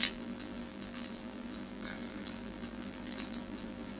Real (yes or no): no